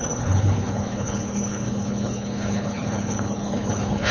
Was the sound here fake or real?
fake